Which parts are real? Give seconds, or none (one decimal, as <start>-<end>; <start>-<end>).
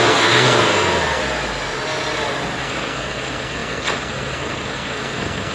1.2-2.6